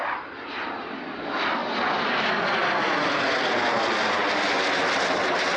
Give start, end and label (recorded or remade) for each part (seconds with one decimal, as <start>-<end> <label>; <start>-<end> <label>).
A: 0.0-5.6 recorded